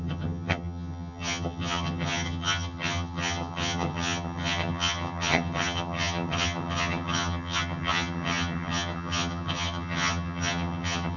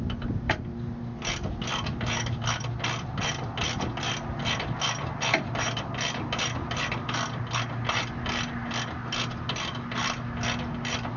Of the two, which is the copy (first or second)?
first